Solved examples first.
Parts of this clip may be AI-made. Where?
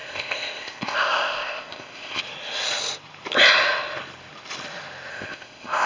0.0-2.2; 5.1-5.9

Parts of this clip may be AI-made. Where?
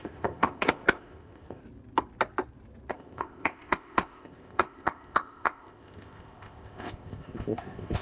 0.0-1.6; 2.9-8.0